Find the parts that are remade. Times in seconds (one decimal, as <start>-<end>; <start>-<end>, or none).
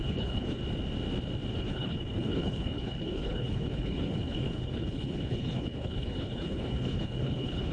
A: 0.0-0.6; 1.5-7.7